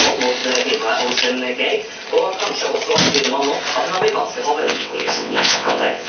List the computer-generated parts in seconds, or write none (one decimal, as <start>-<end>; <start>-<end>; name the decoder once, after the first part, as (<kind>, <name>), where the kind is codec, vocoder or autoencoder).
4.6-6.1 (vocoder, WaveNeXt)